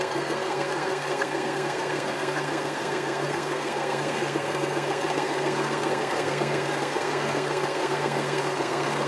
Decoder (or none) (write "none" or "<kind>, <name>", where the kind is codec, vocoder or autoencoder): codec, SNAC